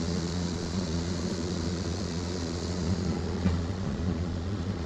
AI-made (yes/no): yes